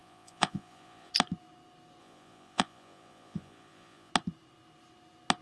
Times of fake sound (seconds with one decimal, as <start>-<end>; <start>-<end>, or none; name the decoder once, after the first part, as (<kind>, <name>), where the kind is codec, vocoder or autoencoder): 0.0-1.1 (vocoder, Vocos); 2.0-4.1